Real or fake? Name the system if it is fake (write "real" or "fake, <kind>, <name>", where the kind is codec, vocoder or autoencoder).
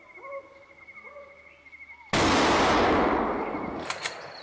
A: real